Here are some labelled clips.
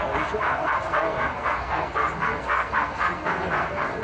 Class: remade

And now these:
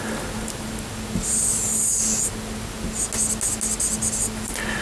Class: recorded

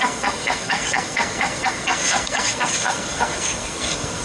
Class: remade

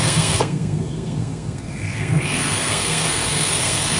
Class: remade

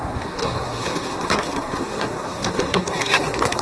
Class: remade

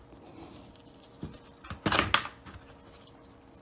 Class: recorded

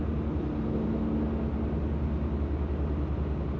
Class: recorded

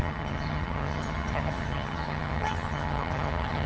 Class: remade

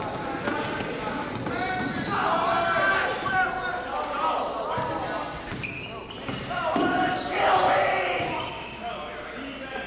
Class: recorded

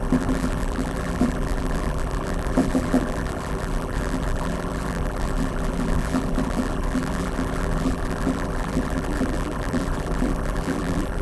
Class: remade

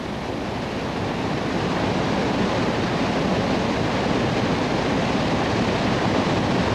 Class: recorded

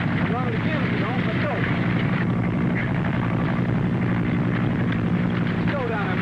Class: recorded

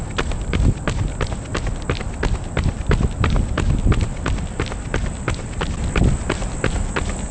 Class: recorded